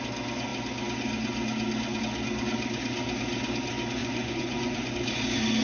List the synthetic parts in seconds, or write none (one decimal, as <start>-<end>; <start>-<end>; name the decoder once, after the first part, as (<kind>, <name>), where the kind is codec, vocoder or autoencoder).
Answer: 4.0-4.9 (vocoder, Vocos)